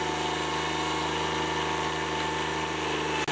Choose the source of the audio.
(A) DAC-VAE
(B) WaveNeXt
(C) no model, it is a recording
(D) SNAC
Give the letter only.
C